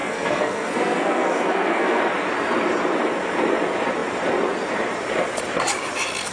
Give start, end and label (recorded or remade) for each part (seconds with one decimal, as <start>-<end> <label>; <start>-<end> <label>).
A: 0.0-2.0 remade; 2.0-6.3 recorded